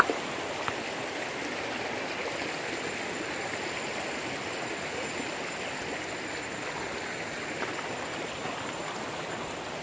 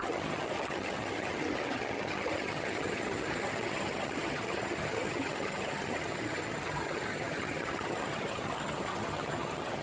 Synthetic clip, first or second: second